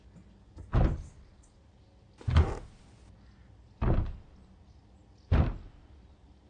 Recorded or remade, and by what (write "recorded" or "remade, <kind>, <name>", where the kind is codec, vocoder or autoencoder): recorded